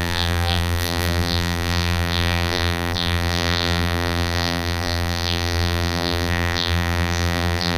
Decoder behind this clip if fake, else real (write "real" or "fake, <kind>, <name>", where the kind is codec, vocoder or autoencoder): fake, vocoder, BigVGAN v2